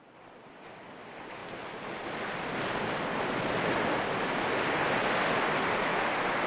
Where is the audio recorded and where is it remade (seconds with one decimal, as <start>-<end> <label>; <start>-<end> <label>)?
0.0-6.5 recorded